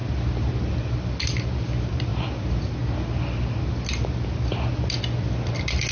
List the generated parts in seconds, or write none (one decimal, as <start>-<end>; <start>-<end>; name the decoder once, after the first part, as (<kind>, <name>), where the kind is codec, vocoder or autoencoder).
none